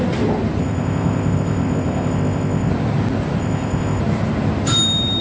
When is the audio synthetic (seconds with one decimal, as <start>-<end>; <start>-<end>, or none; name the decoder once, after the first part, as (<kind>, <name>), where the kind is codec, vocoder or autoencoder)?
0.6-2.7 (codec, ZipCodec); 3.4-4.0